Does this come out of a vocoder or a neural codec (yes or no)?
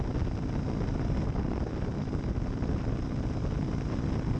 no